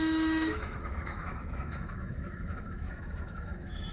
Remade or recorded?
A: remade